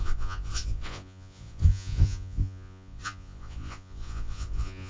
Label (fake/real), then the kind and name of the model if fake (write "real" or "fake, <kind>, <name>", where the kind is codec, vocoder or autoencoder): fake, vocoder, Vocos